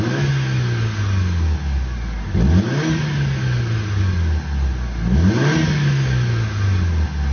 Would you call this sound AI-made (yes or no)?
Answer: no